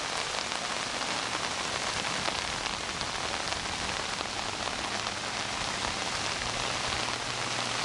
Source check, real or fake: real